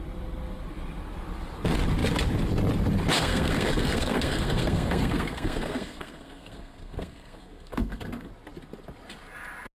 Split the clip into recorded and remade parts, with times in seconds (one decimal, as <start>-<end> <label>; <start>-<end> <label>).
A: 0.0-3.2 recorded; 3.2-8.3 remade; 8.3-9.8 recorded